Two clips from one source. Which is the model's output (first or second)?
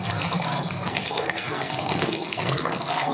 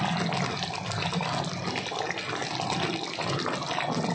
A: first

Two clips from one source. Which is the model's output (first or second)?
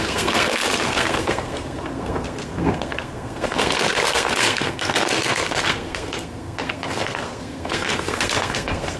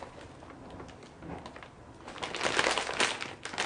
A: first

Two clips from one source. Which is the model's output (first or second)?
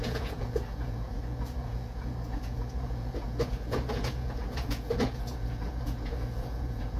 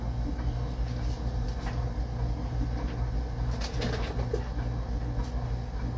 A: first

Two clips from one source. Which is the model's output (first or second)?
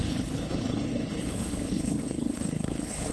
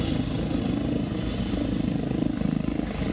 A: first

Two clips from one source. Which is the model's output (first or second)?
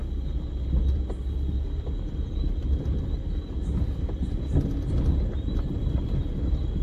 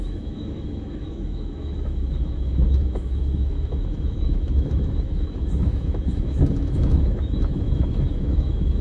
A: second